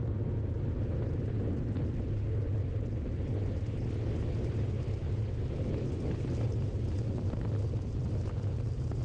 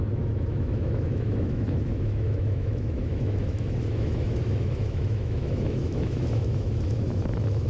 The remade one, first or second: second